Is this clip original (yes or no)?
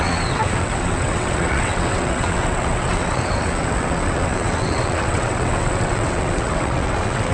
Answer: no